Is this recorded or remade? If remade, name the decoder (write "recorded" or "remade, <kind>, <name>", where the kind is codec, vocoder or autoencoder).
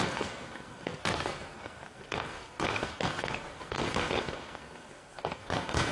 remade, codec, SNAC